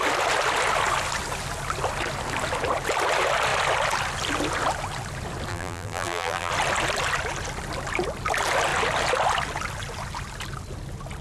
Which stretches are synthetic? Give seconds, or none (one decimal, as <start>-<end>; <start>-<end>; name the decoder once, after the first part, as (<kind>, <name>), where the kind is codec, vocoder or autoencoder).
5.5-6.5 (vocoder, BigVGAN v2)